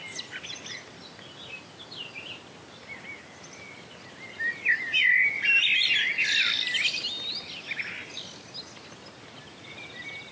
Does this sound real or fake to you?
real